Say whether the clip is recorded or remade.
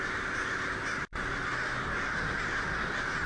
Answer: recorded